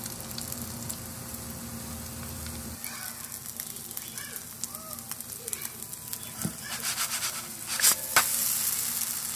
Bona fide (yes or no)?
yes